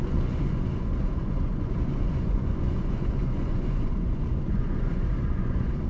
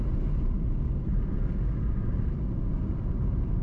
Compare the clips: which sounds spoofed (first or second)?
first